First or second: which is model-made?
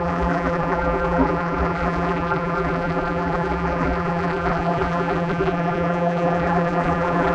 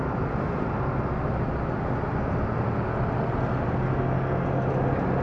first